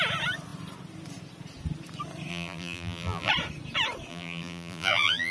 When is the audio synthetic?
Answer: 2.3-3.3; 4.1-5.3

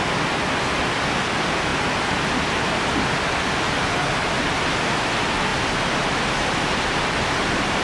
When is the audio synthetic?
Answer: none